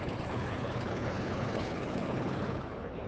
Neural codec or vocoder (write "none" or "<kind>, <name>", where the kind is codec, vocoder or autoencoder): codec, HILCodec